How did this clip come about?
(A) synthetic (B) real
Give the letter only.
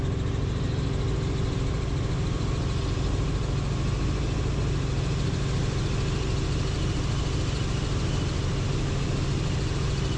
B